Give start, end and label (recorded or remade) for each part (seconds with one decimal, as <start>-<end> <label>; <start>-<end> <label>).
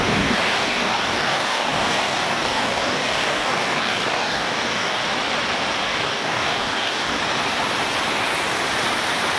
0.0-5.0 remade; 5.0-5.8 recorded; 5.8-7.2 remade; 7.2-9.4 recorded